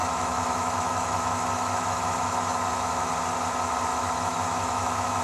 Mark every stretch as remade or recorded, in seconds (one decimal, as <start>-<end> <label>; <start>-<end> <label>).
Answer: 0.0-3.1 remade; 3.1-3.9 recorded; 3.9-5.2 remade